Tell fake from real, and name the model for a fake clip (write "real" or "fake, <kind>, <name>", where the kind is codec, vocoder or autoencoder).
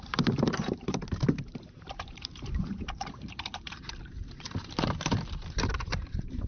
fake, vocoder, BigVGAN v2